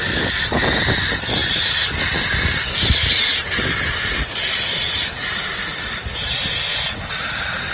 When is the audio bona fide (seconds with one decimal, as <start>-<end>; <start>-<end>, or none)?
0.0-1.4; 4.4-7.7

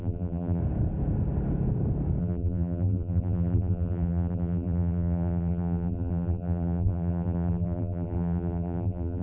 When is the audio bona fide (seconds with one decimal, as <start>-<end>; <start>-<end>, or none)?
0.6-2.2

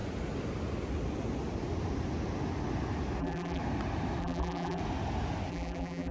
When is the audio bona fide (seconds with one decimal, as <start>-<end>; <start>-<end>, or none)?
0.0-3.2; 3.6-4.2; 4.8-5.5

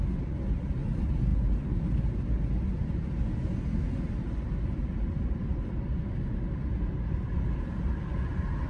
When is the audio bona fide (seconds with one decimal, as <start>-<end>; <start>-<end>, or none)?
0.0-8.7